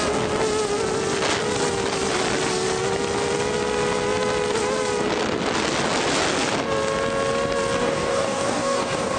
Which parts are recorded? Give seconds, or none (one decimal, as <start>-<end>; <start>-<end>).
0.0-7.8